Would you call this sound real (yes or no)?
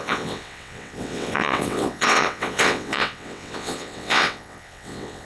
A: no